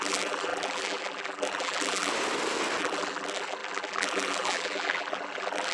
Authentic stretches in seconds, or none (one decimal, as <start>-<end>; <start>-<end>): 2.1-2.8